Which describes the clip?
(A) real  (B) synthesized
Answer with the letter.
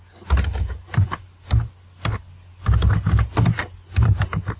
A